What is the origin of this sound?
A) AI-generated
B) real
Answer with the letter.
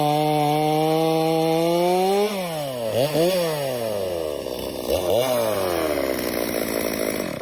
B